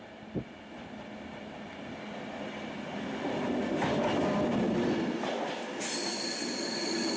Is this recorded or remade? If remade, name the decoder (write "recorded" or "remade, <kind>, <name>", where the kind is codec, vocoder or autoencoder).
recorded